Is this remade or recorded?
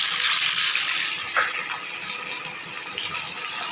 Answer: recorded